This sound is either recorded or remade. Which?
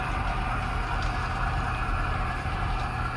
recorded